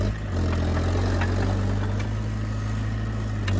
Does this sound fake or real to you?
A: real